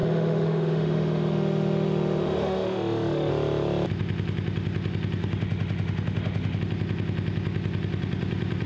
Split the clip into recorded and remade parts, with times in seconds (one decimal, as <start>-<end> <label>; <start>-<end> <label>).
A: 0.0-3.3 remade; 3.3-5.2 recorded; 5.2-6.6 remade; 6.6-8.7 recorded